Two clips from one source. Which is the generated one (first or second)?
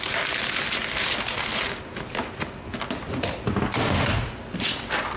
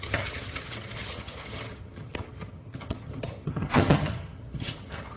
second